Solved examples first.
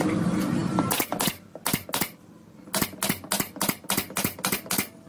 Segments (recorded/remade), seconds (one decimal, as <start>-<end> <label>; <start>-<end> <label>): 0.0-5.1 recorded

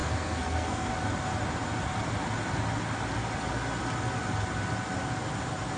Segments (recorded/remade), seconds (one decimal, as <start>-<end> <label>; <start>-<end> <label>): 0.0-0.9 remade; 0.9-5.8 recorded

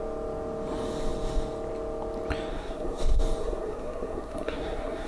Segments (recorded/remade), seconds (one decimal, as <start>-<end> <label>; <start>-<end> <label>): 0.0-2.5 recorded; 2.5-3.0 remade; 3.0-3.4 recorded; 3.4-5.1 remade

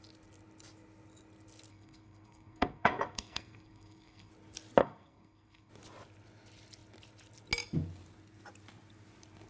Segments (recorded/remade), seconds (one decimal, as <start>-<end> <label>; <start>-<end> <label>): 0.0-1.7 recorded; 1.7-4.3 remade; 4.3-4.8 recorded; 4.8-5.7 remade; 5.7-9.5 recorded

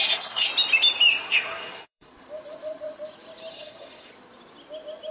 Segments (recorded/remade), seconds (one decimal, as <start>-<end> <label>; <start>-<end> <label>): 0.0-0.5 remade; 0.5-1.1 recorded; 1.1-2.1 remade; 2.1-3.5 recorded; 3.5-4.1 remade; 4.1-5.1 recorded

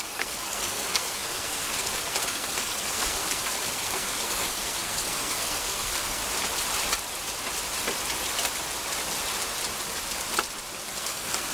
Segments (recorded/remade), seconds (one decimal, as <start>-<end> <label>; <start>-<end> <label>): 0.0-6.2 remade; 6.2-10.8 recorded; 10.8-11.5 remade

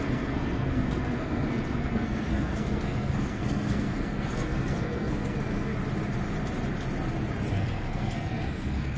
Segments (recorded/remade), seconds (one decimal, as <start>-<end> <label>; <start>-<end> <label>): 0.0-5.7 remade; 5.7-7.5 recorded; 7.5-9.0 remade

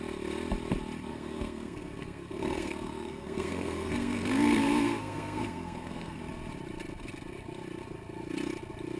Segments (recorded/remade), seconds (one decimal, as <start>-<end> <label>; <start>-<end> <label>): 0.0-1.1 recorded; 1.1-6.2 remade; 6.2-9.0 recorded